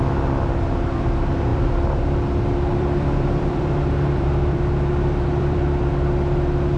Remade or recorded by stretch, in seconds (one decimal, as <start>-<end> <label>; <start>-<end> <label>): 0.0-1.5 recorded; 1.5-5.6 remade; 5.6-6.8 recorded